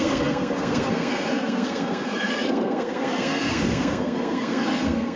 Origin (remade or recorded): remade